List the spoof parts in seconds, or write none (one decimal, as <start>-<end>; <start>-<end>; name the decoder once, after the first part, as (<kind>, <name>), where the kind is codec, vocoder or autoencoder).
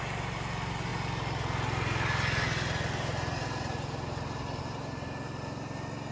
none